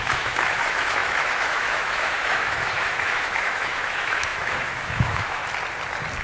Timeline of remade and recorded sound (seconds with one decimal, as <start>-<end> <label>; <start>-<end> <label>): 0.0-5.4 remade; 5.4-6.2 recorded